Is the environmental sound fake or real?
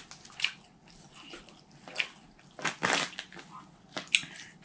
real